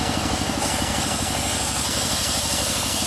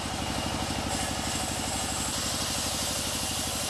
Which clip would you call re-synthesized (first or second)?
first